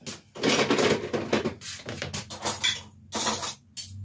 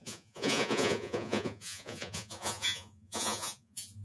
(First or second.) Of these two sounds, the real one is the first